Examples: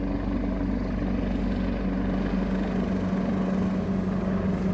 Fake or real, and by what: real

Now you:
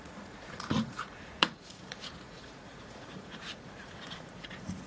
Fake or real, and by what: fake, vocoder, Vocos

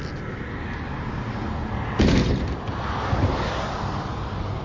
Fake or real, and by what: real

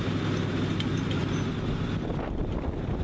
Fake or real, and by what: real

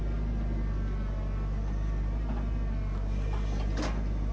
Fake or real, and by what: real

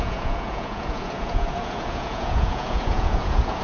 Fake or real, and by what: fake, vocoder, Vocos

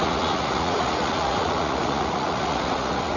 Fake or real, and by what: fake, vocoder, Vocos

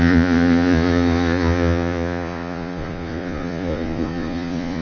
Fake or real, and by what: fake, vocoder, Vocos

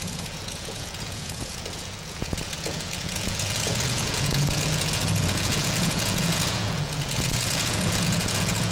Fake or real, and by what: fake, vocoder, Vocos